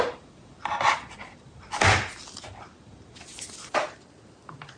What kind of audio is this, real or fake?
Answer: real